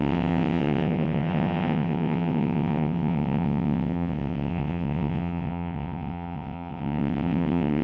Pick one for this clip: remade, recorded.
remade